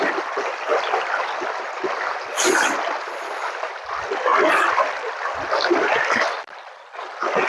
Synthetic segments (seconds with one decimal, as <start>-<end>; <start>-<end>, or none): none